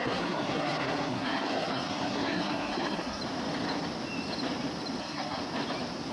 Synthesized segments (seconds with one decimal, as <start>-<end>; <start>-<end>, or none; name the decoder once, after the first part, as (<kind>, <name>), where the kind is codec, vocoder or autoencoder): 0.0-3.2 (codec, SNAC); 5.0-5.4